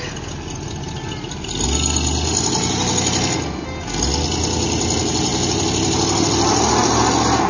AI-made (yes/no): no